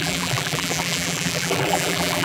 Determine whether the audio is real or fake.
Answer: fake